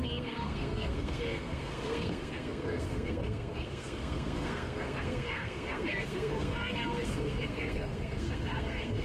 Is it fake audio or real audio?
fake